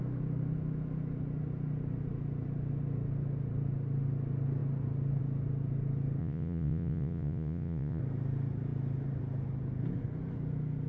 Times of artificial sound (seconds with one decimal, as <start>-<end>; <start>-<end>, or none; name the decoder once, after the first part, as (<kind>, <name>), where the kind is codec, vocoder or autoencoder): 6.2-8.0 (vocoder, Vocos)